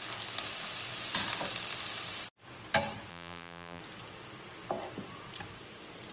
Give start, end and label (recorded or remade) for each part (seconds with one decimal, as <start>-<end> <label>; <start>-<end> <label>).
0.0-3.1 recorded; 3.1-3.8 remade; 3.8-6.1 recorded

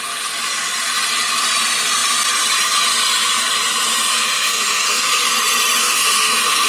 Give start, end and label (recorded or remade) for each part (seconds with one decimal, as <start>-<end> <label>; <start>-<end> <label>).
0.0-4.1 recorded; 4.1-5.3 remade; 5.3-5.8 recorded; 5.8-6.7 remade

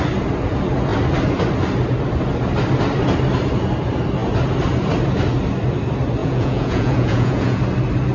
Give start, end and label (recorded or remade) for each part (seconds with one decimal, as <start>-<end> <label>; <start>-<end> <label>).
0.0-6.2 recorded; 6.2-7.6 remade; 7.6-8.1 recorded

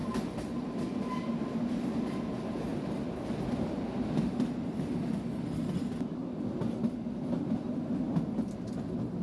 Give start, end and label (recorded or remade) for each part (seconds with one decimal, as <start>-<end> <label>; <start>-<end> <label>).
0.0-9.2 recorded

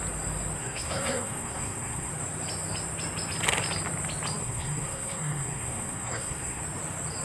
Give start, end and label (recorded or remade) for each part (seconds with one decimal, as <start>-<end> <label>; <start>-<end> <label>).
0.0-0.6 recorded; 0.6-2.1 remade; 2.1-4.4 recorded; 4.4-6.6 remade; 6.6-7.2 recorded

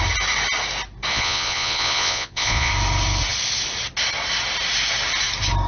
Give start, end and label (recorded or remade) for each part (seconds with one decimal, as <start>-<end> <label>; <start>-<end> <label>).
0.0-1.1 recorded; 1.1-2.7 remade; 2.7-5.7 recorded

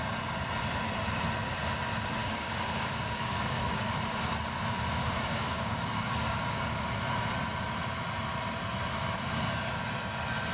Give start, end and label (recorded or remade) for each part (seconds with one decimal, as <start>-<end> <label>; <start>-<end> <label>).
0.0-2.2 recorded; 2.2-3.9 remade; 3.9-5.0 recorded; 5.0-6.8 remade; 6.8-10.5 recorded